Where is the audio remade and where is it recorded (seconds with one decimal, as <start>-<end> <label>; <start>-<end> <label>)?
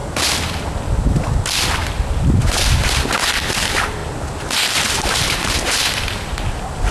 0.0-6.9 recorded